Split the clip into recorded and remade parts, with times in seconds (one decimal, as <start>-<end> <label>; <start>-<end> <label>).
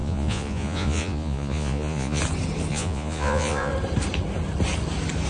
0.0-2.2 remade; 2.2-2.7 recorded; 2.7-3.7 remade; 3.7-5.3 recorded